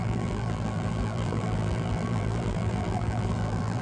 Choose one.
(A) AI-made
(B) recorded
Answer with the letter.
A